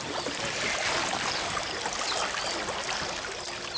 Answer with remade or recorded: recorded